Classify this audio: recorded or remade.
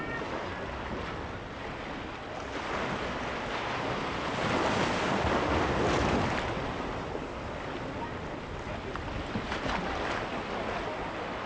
recorded